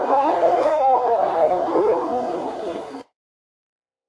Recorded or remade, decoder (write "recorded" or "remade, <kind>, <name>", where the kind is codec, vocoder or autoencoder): remade, codec, SNAC